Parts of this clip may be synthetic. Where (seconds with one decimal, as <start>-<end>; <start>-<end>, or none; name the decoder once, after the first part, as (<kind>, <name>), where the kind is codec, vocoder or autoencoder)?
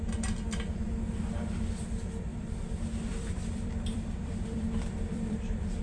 2.3-5.8 (vocoder, BigVGAN v2)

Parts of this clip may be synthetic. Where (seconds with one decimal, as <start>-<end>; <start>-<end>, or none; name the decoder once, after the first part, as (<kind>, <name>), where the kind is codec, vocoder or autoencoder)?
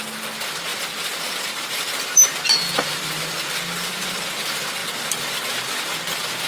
none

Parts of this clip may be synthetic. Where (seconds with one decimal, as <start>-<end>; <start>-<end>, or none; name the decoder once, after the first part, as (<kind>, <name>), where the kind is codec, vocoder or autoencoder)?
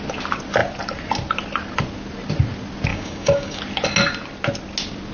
2.9-3.6 (codec, DAC)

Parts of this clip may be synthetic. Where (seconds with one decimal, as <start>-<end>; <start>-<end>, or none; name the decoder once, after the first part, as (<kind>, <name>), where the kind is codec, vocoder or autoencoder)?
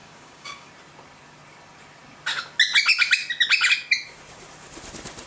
0.0-0.7 (codec, DAC)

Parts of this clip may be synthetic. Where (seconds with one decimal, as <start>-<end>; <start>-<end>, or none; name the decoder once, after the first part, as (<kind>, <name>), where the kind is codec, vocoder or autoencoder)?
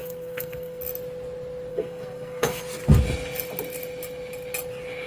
0.0-0.8 (codec, SNAC); 1.7-2.6